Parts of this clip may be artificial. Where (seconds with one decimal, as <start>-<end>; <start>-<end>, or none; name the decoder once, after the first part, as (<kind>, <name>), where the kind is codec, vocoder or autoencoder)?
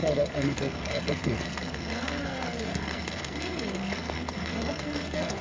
0.0-5.4 (codec, SNAC)